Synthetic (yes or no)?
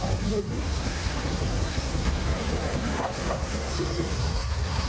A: yes